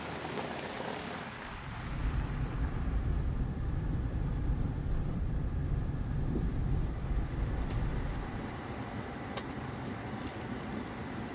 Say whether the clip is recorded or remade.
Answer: remade